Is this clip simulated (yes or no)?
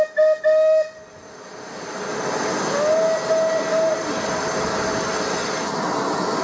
no